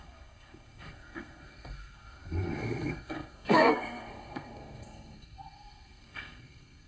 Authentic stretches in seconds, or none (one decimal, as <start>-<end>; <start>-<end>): none